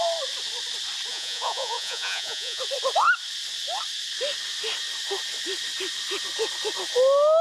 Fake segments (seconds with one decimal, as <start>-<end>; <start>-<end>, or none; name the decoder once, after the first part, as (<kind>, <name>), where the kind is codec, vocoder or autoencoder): 1.1-2.6 (vocoder, Vocos)